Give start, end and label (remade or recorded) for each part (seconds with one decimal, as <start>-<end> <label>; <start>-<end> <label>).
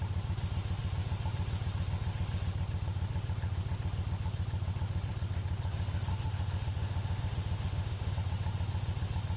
0.0-6.1 recorded; 6.1-8.1 remade; 8.1-9.4 recorded